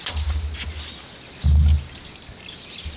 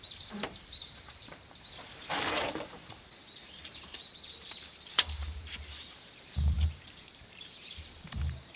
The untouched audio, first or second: first